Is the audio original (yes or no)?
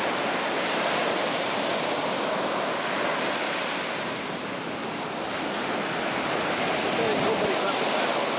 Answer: yes